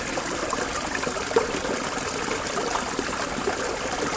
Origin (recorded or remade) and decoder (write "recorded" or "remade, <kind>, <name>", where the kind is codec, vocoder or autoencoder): recorded